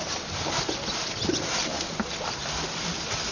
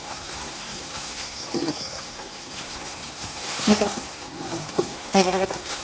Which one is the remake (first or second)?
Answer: second